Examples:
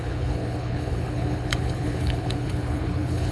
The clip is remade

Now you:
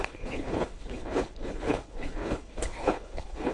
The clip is remade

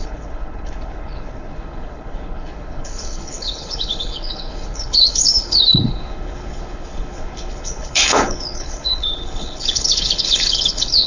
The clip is remade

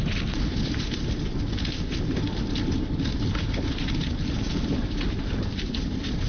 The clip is recorded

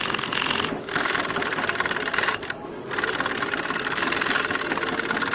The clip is recorded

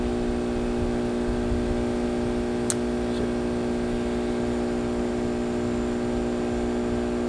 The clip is recorded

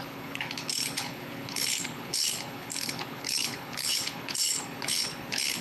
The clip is remade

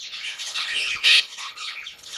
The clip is remade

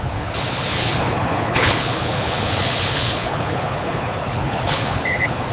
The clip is remade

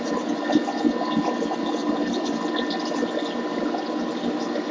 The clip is recorded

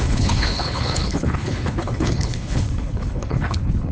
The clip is remade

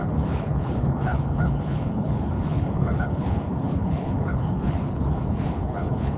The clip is remade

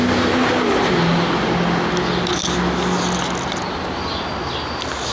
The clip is recorded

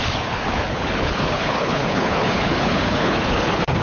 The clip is remade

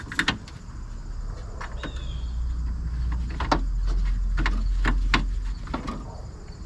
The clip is recorded